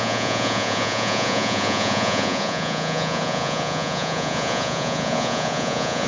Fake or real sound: fake